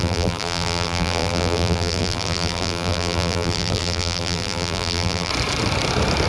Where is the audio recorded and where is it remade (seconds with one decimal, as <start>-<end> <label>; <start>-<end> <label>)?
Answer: 0.0-5.3 remade; 5.3-6.3 recorded